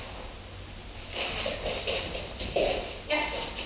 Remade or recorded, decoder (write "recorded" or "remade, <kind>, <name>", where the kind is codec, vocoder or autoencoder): recorded